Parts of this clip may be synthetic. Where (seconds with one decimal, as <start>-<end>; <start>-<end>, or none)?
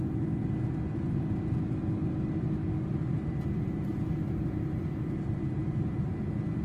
2.9-6.1